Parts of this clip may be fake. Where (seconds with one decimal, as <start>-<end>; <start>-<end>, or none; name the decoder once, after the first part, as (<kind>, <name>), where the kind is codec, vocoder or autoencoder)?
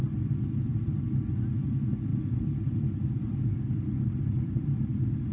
none